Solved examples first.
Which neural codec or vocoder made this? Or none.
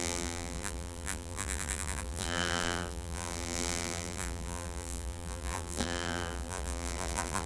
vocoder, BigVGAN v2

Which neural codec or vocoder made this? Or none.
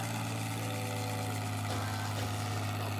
none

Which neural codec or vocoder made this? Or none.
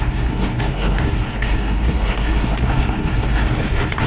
codec, SNAC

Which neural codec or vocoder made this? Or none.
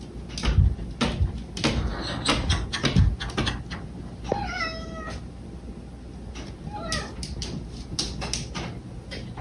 none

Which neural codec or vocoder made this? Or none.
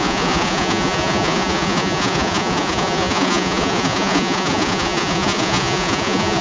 vocoder, Vocos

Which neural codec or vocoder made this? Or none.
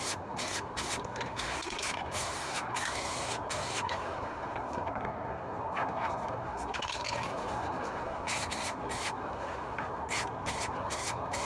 codec, SNAC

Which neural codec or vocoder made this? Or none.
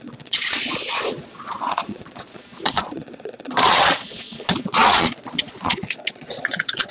vocoder, Vocos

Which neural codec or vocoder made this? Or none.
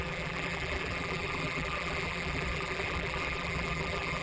vocoder, BigVGAN v2